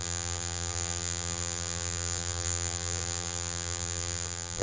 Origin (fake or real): fake